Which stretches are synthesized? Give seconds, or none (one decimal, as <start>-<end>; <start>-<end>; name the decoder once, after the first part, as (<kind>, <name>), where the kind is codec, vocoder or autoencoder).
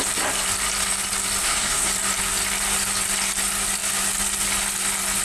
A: 1.4-1.9 (codec, SNAC)